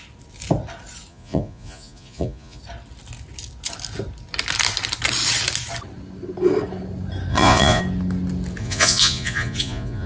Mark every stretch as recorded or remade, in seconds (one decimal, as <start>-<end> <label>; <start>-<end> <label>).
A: 0.0-1.1 recorded; 1.1-2.6 remade; 2.6-7.3 recorded; 7.3-7.8 remade; 7.8-8.6 recorded; 8.6-10.1 remade